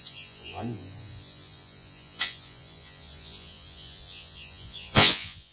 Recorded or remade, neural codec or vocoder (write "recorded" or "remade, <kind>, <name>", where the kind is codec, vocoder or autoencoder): remade, vocoder, Vocos